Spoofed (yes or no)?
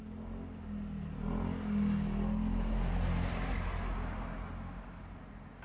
no